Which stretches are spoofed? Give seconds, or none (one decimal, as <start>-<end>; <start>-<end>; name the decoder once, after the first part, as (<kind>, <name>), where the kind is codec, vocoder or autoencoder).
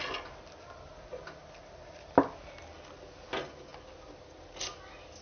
none